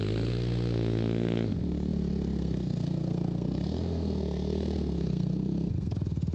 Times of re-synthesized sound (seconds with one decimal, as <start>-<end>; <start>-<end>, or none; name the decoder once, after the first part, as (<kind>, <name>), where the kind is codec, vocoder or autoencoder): 0.0-6.3 (codec, SNAC)